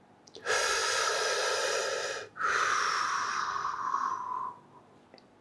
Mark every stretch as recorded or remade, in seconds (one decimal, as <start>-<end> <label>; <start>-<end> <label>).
0.0-3.3 recorded; 3.3-4.1 remade; 4.1-5.4 recorded